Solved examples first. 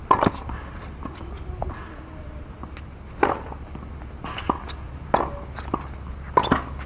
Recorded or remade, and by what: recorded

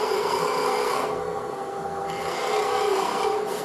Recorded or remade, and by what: remade, codec, SNAC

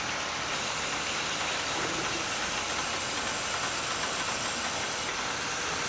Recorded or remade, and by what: recorded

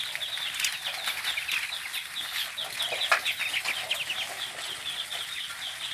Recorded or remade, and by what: recorded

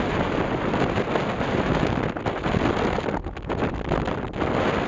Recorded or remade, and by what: recorded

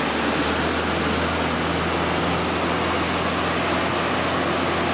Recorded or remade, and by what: recorded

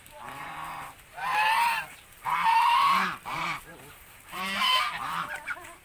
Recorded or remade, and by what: remade, vocoder, BigVGAN v2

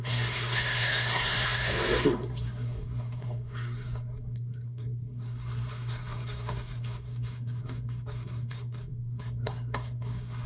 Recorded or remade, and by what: remade, codec, SNAC